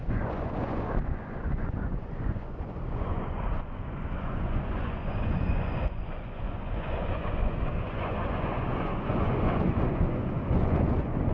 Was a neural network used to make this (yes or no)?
yes